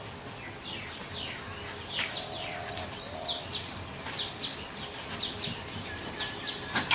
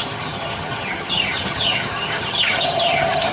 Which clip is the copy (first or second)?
second